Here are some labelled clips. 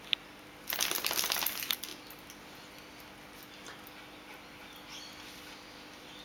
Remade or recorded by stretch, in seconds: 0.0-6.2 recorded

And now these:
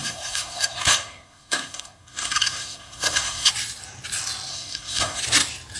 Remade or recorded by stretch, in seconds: 0.0-3.5 remade; 3.5-4.5 recorded; 4.5-5.2 remade; 5.2-5.8 recorded

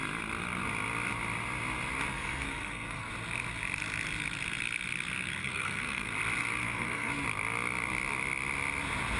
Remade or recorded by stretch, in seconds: 0.0-2.1 recorded; 2.1-3.1 remade; 3.1-5.4 recorded; 5.4-6.1 remade; 6.1-6.6 recorded; 6.6-7.1 remade; 7.1-9.2 recorded

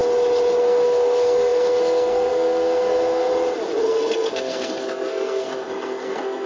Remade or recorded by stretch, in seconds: 0.0-0.6 recorded; 0.6-3.3 remade; 3.3-3.8 recorded; 3.8-6.5 remade

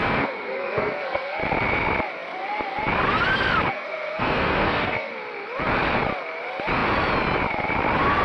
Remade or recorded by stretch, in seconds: 0.0-1.4 remade; 1.4-3.7 recorded; 3.7-5.1 remade; 5.1-8.2 recorded

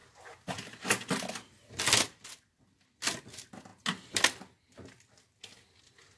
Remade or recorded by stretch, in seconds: 0.0-6.2 recorded